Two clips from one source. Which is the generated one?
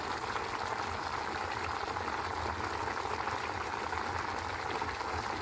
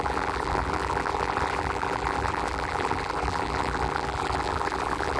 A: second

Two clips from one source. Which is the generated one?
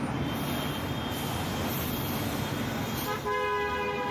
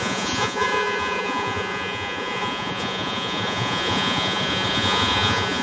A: second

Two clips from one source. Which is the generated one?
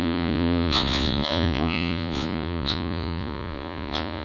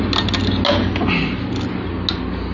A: first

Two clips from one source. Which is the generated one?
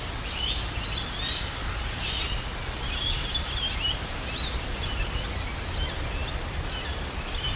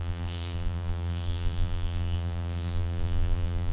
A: second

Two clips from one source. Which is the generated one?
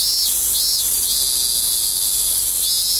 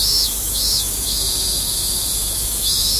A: second